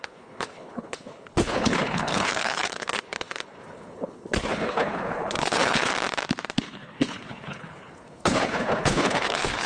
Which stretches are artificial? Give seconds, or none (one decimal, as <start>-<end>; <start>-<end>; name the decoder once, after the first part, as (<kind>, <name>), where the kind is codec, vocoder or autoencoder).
0.0-5.9 (codec, HILCodec); 6.6-9.7